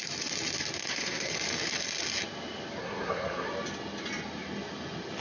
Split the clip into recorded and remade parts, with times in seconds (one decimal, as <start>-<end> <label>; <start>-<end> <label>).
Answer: 0.0-0.8 recorded; 0.8-1.3 remade; 1.3-2.8 recorded; 2.8-3.5 remade; 3.5-5.2 recorded